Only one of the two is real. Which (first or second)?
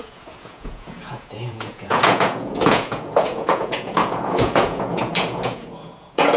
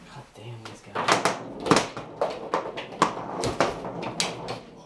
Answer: second